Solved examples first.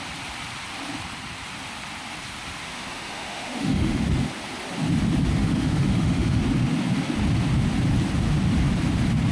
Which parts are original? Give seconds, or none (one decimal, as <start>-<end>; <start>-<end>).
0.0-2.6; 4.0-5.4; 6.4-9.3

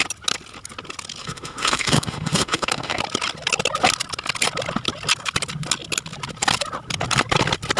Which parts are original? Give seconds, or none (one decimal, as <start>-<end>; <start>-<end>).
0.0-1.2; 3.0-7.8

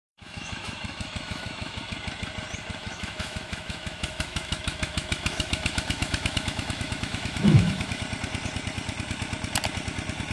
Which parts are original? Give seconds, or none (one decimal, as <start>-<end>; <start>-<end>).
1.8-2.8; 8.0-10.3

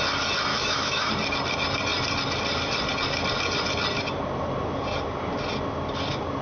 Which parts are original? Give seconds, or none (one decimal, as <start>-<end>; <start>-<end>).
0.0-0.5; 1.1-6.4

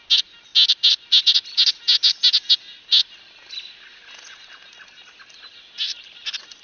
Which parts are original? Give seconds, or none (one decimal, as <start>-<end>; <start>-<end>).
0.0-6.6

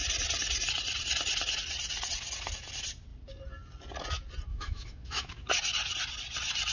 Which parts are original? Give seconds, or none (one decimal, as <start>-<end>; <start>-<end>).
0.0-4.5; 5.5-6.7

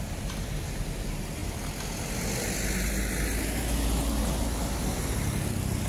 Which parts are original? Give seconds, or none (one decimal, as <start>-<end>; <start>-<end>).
0.0-5.9